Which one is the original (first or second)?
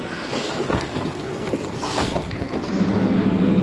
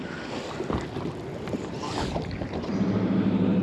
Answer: second